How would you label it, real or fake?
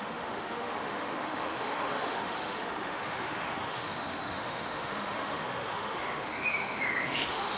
fake